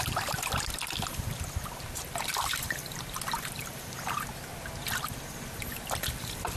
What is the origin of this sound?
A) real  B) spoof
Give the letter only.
A